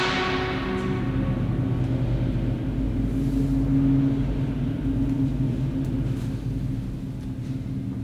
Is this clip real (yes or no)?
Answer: yes